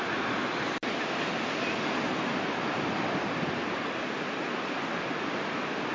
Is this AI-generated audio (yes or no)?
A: no